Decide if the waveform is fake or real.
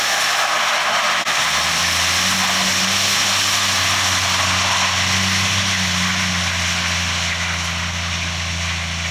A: real